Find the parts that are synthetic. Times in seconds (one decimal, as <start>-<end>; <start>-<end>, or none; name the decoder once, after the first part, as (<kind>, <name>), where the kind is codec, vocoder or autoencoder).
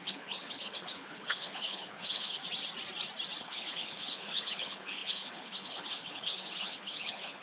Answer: 0.0-2.4 (codec, HILCodec); 3.4-7.4